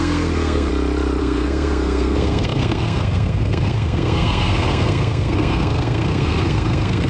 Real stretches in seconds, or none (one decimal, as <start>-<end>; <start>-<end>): 0.7-1.2